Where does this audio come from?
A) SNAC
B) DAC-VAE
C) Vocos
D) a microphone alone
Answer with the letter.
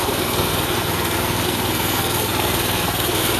A